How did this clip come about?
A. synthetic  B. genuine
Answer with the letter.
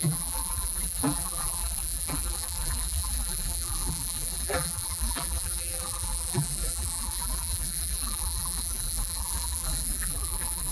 A